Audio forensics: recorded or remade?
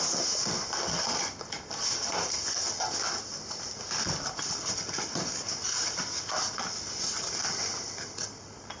recorded